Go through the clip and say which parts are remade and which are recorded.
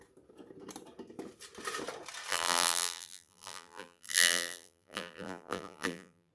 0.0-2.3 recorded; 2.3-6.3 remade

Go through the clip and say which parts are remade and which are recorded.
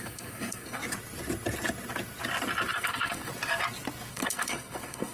0.0-0.8 remade; 0.8-2.7 recorded; 2.7-3.3 remade; 3.3-4.1 recorded; 4.1-5.1 remade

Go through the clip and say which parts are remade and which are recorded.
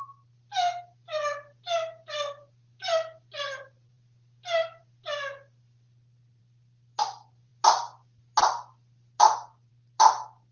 0.0-10.5 recorded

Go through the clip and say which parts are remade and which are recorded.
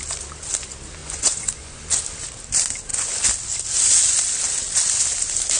0.0-1.0 recorded; 1.0-1.8 remade; 1.8-5.6 recorded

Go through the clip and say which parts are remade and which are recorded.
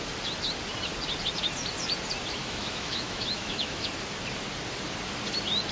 0.0-2.4 recorded; 2.4-3.9 remade; 3.9-5.7 recorded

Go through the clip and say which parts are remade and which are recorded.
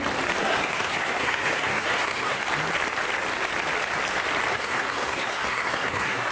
0.0-0.4 recorded; 0.4-2.4 remade; 2.4-4.5 recorded; 4.5-6.3 remade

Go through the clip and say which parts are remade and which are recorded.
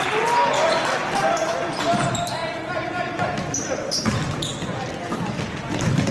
0.0-6.1 recorded